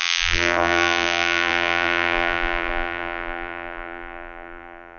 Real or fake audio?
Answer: fake